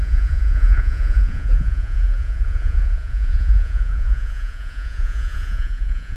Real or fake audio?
fake